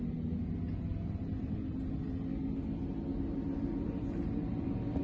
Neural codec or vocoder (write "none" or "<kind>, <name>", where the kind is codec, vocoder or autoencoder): none